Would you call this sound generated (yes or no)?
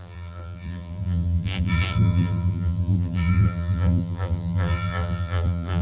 yes